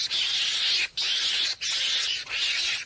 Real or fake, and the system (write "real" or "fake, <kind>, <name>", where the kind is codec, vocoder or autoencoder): real